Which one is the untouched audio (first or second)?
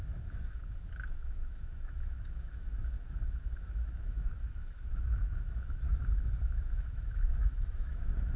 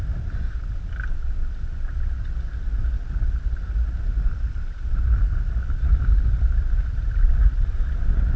second